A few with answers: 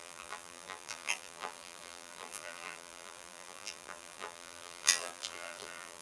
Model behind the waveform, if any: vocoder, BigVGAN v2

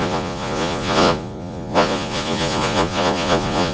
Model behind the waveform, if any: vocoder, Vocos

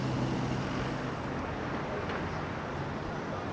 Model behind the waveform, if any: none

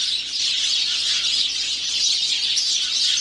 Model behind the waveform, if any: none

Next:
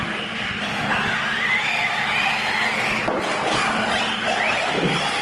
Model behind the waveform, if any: none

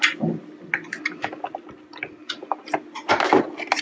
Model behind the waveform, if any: none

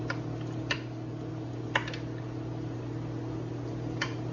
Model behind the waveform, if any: none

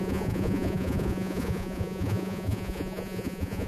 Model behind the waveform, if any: vocoder, Vocos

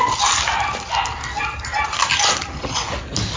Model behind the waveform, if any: none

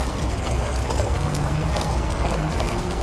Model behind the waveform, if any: codec, SNAC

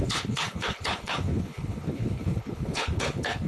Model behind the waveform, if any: codec, HILCodec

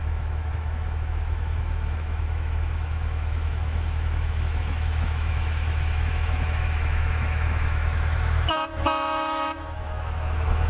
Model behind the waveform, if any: autoencoder, DAC-VAE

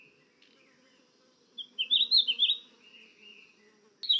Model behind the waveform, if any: none